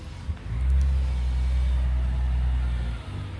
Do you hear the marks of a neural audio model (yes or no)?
no